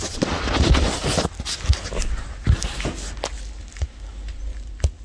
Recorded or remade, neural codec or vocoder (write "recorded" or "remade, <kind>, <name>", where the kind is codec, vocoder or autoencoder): recorded